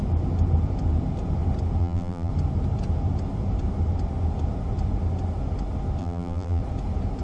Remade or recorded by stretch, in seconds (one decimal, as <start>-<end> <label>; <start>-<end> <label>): 0.0-1.8 recorded; 1.8-2.3 remade; 2.3-6.0 recorded; 6.0-6.6 remade; 6.6-7.2 recorded